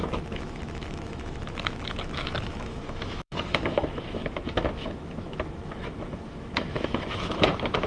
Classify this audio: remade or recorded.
remade